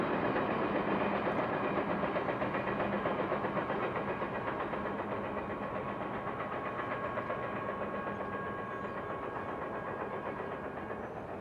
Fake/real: real